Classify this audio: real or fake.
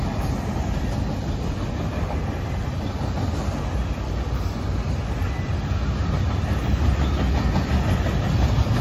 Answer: real